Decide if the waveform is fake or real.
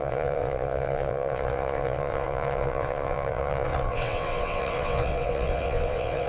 fake